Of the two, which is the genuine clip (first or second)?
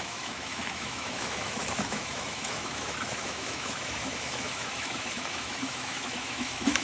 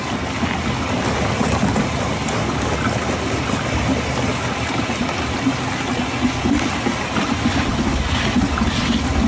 second